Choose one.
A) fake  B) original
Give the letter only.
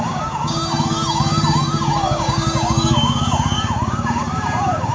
A